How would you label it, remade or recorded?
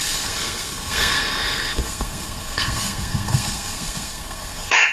remade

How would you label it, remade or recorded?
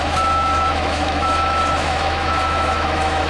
remade